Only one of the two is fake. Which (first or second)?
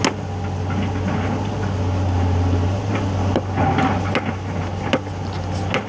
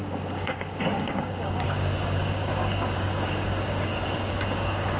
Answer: second